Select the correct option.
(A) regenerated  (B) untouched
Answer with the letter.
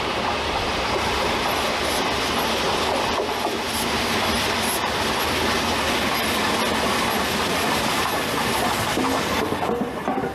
B